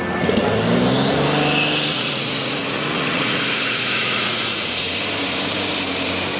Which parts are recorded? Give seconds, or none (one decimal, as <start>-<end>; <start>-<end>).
0.0-1.9; 5.0-6.4